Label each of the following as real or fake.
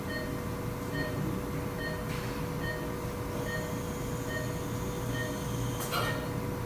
real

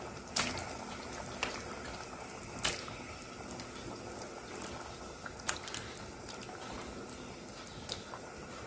real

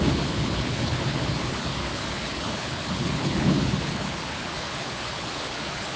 fake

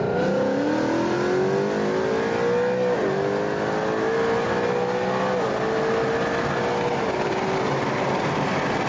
real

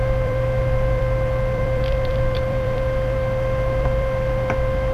fake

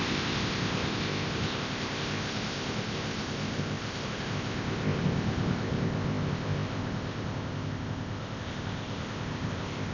fake